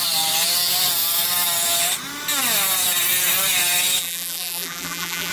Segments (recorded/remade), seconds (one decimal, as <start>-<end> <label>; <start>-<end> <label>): 0.0-4.0 recorded; 4.0-5.3 remade